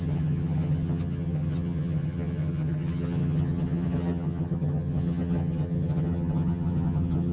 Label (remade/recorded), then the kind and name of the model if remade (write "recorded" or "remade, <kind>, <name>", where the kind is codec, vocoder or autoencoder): remade, vocoder, HiFi-GAN